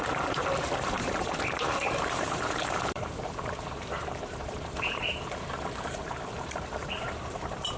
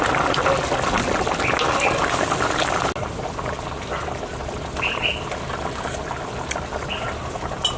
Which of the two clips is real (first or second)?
second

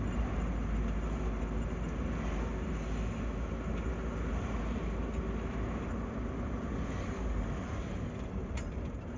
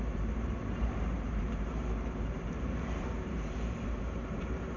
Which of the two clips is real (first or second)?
first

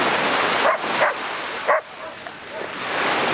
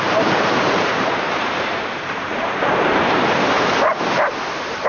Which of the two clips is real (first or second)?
first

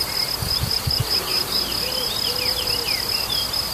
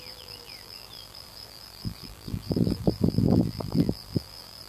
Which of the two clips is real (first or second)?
first